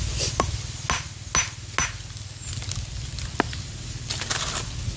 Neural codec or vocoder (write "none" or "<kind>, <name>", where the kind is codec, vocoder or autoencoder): none